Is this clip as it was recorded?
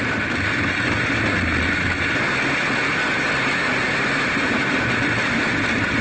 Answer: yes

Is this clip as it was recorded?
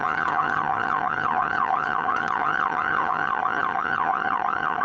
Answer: no